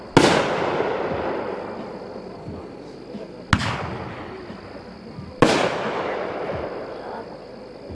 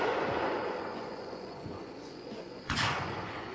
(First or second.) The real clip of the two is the first